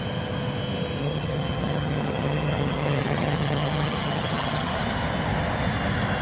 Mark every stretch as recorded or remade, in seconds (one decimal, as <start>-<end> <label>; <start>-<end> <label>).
0.0-1.0 recorded; 1.0-4.7 remade; 4.7-6.2 recorded